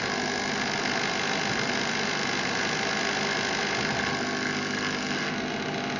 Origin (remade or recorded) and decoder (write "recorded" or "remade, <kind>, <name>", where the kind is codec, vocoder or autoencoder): recorded